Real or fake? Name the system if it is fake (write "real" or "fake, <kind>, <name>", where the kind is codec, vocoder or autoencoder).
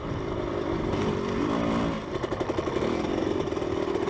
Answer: fake, vocoder, BigVGAN v2